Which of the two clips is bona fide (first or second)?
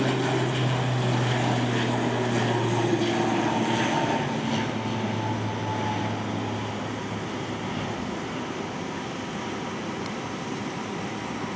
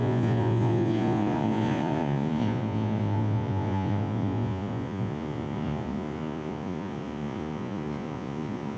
first